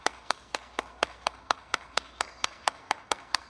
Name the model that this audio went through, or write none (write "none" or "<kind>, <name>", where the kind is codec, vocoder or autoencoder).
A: codec, SNAC